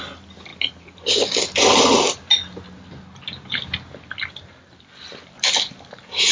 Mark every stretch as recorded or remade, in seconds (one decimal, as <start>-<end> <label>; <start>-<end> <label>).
0.0-6.3 recorded